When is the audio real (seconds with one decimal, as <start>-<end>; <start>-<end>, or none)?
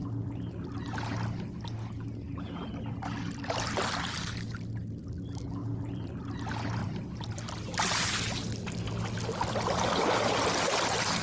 0.5-5.6; 6.2-6.8; 8.0-11.2